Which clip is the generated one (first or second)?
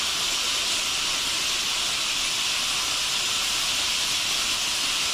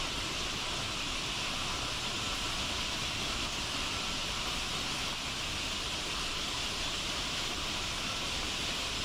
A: first